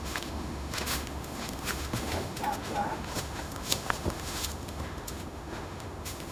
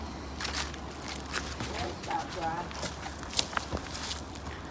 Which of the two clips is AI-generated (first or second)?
first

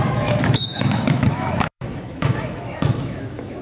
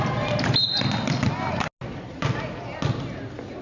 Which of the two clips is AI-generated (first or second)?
first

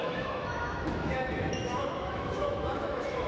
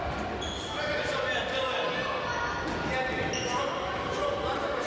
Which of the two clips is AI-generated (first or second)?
first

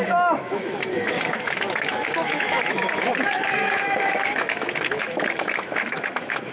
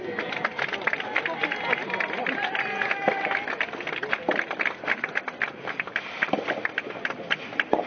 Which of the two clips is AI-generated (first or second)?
first